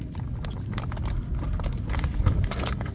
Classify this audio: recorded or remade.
remade